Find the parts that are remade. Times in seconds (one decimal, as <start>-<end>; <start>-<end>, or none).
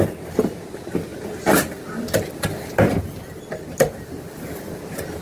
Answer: none